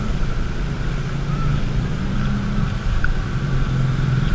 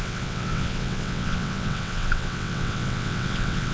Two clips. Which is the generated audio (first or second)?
second